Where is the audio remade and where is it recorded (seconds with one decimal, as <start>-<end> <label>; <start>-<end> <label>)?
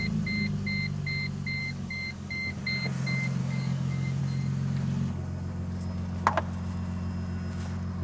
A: 0.0-1.6 recorded; 1.6-2.6 remade; 2.6-3.4 recorded; 3.4-4.2 remade; 4.2-8.0 recorded